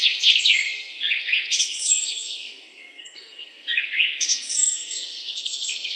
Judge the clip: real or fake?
fake